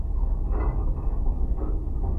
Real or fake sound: real